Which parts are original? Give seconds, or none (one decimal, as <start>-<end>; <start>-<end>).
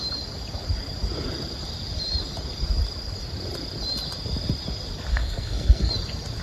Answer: 0.0-5.1; 5.9-6.4